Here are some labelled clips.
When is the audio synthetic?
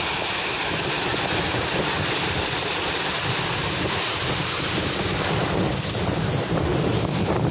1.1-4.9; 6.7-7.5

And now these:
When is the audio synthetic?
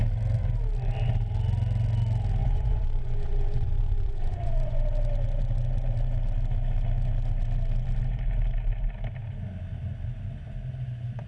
2.4-4.8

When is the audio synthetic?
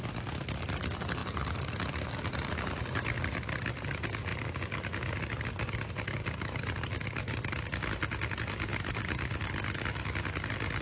1.2-1.7; 8.7-9.5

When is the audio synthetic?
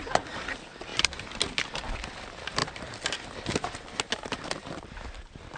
none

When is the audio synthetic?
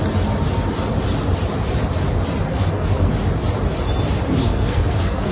2.5-3.1; 4.4-5.3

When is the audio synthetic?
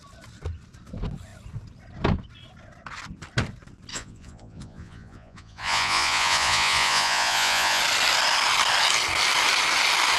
3.9-7.8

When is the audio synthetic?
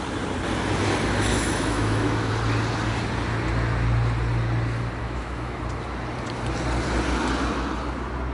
1.3-2.3; 5.0-5.6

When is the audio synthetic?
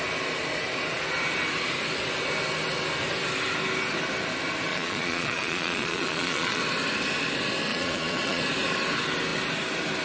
4.7-6.6; 7.7-8.4